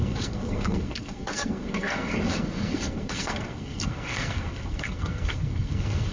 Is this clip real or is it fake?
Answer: fake